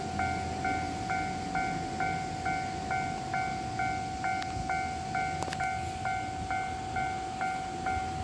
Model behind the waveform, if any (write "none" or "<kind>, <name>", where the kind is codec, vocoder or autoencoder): none